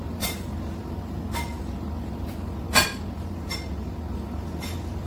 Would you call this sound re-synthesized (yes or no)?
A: no